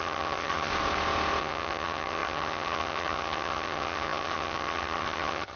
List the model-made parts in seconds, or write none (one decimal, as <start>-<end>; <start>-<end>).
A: 0.0-0.7; 1.4-5.6